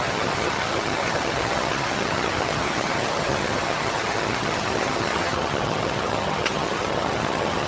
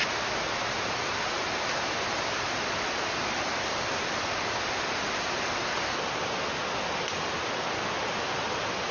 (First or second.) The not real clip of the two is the first